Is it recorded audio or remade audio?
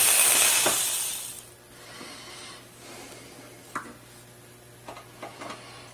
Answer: recorded